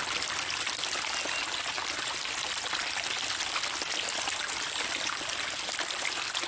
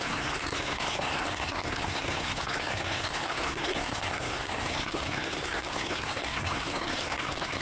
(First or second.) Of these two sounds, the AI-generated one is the second